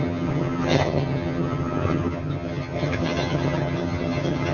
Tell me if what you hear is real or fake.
fake